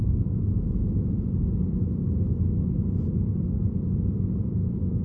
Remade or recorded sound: recorded